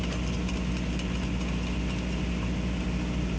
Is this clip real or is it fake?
real